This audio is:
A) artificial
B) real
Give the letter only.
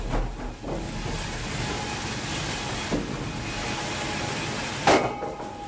B